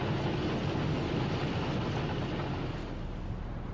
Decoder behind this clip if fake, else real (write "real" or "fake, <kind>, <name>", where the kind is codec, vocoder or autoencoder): real